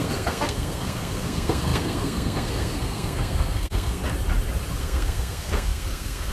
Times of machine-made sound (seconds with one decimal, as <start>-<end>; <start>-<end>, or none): 0.0-4.0; 4.8-6.3